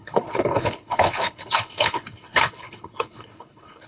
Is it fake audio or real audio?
fake